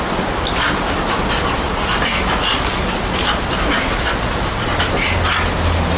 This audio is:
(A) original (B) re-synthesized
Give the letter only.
A